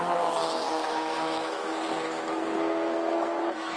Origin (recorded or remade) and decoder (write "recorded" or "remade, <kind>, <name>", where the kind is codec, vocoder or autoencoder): remade, codec, SNAC